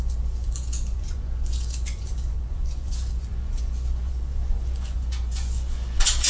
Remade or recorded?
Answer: remade